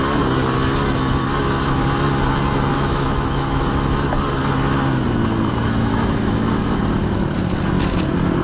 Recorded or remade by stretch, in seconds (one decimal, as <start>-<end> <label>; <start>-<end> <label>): 0.0-2.7 recorded; 2.7-3.7 remade; 3.7-5.9 recorded; 5.9-6.8 remade; 6.8-8.4 recorded